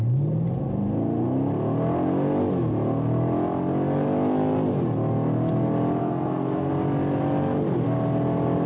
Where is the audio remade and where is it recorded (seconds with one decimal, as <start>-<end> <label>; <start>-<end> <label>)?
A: 0.0-6.0 recorded; 6.0-6.7 remade; 6.7-8.7 recorded